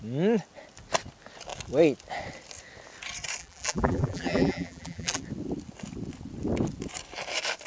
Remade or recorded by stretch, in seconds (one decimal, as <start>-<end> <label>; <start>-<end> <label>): 0.0-3.4 recorded; 3.4-5.2 remade; 5.2-7.7 recorded